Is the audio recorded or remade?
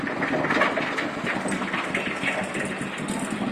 recorded